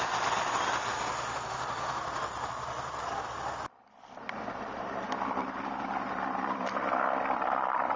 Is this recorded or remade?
remade